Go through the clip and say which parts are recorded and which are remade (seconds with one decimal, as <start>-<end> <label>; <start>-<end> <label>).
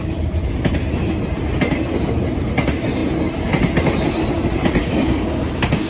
0.0-4.8 recorded; 4.8-5.9 remade